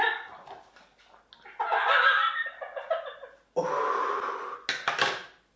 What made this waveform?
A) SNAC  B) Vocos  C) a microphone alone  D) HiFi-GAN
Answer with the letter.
C